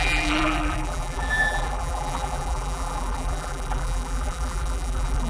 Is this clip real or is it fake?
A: fake